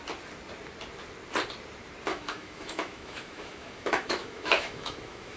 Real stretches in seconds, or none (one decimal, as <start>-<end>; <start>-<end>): 0.0-2.1